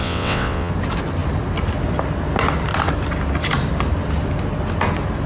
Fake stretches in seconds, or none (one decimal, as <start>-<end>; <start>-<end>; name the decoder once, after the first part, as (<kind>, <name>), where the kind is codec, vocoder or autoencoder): 0.0-0.7 (vocoder, WaveNeXt)